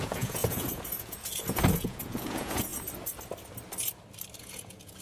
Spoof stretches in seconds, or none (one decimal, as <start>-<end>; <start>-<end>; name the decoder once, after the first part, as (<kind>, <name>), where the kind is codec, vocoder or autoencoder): 0.0-2.7 (vocoder, Vocos); 4.4-5.0